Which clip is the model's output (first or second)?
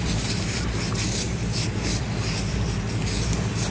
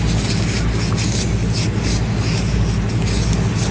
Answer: first